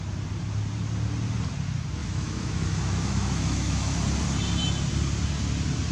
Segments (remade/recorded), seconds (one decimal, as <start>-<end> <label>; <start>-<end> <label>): 0.0-2.0 recorded; 2.0-4.0 remade; 4.0-5.9 recorded